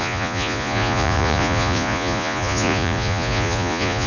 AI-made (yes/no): yes